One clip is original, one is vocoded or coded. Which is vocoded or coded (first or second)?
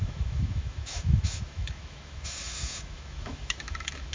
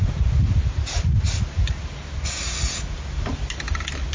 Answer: first